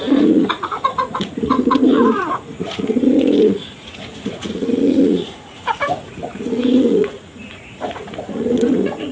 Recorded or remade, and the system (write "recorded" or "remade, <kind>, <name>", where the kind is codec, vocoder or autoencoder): remade, vocoder, Vocos